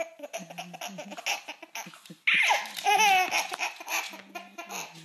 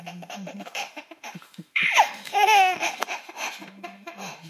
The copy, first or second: second